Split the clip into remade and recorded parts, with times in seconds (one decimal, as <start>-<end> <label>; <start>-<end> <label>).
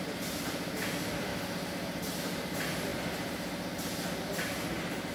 0.0-1.3 remade; 1.3-2.2 recorded; 2.2-2.9 remade; 2.9-5.1 recorded